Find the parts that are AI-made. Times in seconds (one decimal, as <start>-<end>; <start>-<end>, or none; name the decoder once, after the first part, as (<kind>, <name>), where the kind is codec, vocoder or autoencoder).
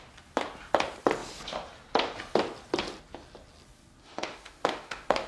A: 4.0-5.3 (autoencoder, DAC-VAE)